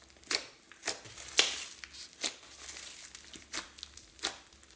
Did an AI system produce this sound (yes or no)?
no